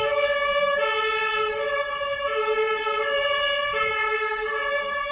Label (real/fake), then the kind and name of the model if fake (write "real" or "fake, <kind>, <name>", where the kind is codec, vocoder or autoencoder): real